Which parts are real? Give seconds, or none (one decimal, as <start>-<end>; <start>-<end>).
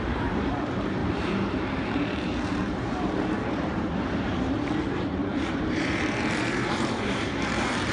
none